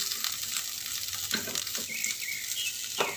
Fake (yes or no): no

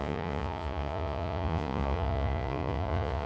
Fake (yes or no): yes